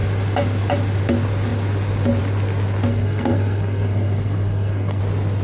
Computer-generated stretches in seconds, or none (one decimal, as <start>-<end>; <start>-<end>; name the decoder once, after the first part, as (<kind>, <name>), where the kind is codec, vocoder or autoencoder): 2.9-5.0 (codec, SNAC)

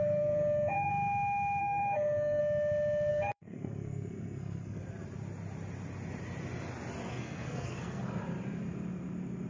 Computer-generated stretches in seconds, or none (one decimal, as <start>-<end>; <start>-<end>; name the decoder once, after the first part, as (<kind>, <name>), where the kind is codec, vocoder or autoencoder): 0.0-0.9 (codec, SNAC); 1.6-2.4; 3.1-4.8; 7.1-8.2